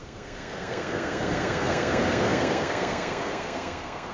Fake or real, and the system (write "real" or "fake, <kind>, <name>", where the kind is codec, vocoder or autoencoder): fake, codec, SNAC